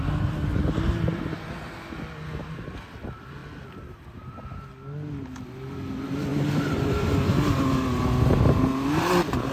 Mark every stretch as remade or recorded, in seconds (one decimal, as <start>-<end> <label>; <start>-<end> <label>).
0.0-3.4 recorded; 3.4-4.0 remade; 4.0-6.3 recorded; 6.3-7.6 remade; 7.6-9.5 recorded